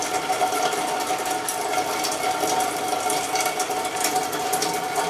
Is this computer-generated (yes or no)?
no